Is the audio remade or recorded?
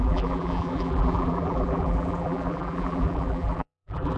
remade